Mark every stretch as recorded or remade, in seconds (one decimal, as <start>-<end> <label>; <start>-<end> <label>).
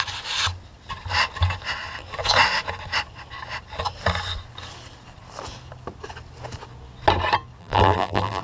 0.0-7.6 recorded; 7.6-8.4 remade